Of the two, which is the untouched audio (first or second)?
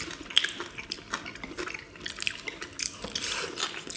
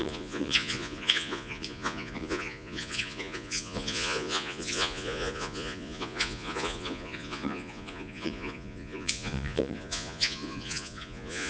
first